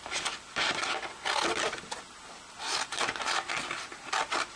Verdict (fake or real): real